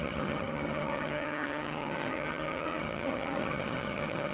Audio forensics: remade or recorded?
remade